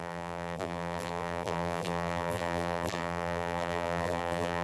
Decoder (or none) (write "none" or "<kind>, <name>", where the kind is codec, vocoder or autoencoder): vocoder, BigVGAN v2